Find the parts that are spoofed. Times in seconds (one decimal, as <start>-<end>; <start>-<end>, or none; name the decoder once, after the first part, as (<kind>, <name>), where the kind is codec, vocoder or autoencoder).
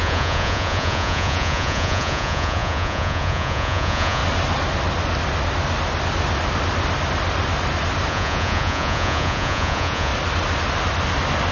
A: 0.0-4.2 (vocoder, Vocos); 8.1-10.1